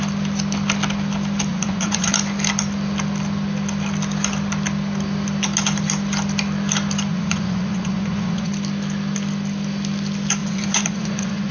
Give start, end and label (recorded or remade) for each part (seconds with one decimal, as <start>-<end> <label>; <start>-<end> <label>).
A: 0.0-1.5 recorded; 1.5-2.1 remade; 2.1-7.1 recorded; 7.1-8.5 remade; 8.5-10.4 recorded; 10.4-11.5 remade